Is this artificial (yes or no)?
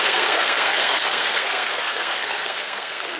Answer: yes